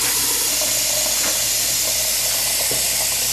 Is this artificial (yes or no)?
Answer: no